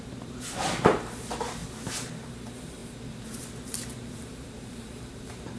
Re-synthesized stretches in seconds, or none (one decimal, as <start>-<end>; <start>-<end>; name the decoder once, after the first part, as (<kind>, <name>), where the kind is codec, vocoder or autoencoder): 0.0-5.6 (vocoder, BigVGAN v2)